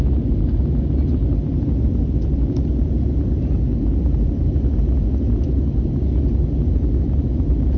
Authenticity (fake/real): real